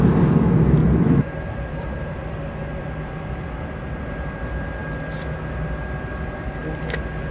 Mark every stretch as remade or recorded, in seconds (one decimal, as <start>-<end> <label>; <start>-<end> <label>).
0.0-0.8 recorded; 0.8-4.0 remade; 4.0-7.3 recorded